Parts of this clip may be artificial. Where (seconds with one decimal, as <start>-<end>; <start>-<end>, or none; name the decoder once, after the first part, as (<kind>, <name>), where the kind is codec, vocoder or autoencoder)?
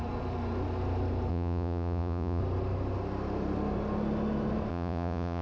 1.3-2.4 (vocoder, Vocos); 4.7-5.4